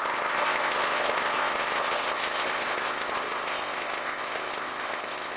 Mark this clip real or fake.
fake